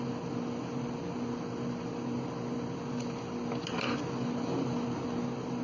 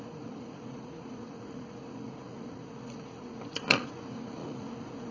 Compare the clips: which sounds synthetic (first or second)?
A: second